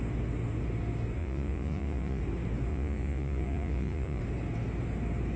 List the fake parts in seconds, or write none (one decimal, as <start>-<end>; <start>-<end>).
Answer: 1.2-2.2; 2.7-4.2